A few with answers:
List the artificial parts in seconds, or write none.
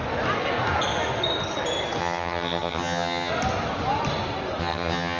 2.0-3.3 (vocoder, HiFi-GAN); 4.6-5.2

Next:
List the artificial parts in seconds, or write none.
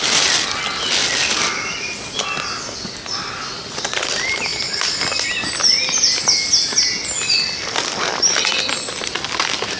none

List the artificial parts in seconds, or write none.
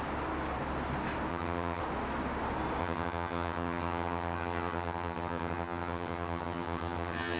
1.3-1.8 (vocoder, HiFi-GAN); 2.8-7.4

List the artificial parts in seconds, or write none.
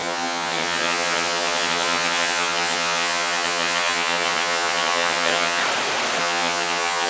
0.0-5.6 (vocoder, HiFi-GAN); 6.2-7.1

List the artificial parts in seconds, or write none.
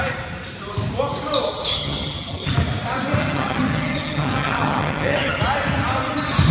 1.7-2.5 (vocoder, HiFi-GAN); 3.2-5.4